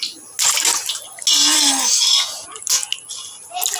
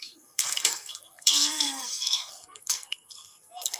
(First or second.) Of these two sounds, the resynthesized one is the second